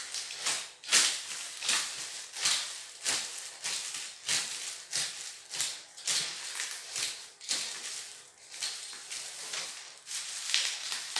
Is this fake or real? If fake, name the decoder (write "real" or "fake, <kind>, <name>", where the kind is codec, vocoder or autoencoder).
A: real